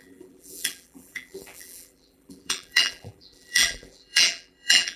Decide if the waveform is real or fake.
fake